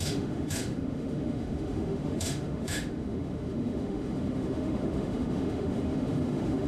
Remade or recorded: remade